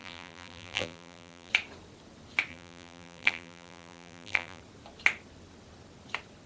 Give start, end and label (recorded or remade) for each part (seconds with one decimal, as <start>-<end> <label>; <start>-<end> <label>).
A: 0.0-1.5 remade; 1.5-2.5 recorded; 2.5-4.6 remade; 4.6-6.5 recorded